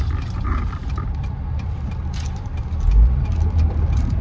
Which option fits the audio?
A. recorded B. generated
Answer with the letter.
A